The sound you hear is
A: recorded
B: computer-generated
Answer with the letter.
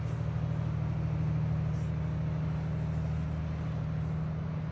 A